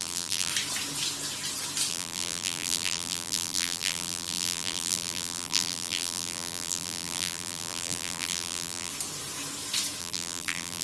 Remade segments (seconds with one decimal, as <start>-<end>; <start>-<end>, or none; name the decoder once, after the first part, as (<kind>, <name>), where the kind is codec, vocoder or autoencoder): 0.0-0.5 (vocoder, BigVGAN v2); 1.9-8.9; 10.0-10.8